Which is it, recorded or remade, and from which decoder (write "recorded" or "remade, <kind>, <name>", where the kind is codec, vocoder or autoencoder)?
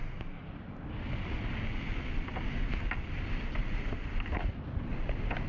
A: recorded